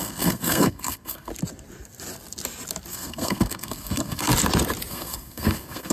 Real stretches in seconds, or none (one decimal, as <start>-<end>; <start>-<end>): 1.3-2.9; 4.3-4.9